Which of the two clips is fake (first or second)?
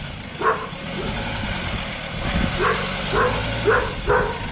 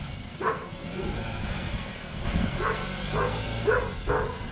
second